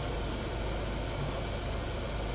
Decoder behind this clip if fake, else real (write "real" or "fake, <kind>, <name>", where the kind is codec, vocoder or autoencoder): real